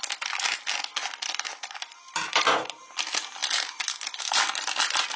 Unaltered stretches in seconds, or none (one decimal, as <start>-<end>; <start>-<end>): 0.0-5.2